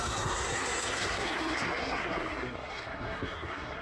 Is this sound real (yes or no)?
no